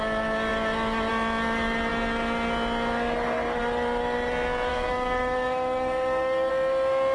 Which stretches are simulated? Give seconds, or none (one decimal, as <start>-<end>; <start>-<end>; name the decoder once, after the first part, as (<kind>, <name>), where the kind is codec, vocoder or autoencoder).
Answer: 4.7-6.5 (codec, DAC)